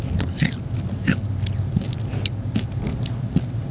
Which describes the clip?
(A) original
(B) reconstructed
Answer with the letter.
A